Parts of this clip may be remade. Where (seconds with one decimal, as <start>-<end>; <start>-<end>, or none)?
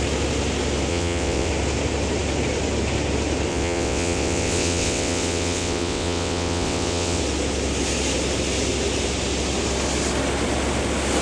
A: 0.9-1.5; 3.5-7.2